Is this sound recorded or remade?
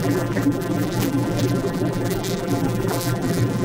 remade